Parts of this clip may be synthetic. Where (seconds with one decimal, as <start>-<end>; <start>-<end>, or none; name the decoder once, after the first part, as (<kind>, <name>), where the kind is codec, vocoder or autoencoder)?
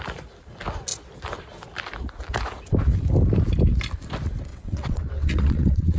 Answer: 4.5-6.0 (vocoder, WaveNeXt)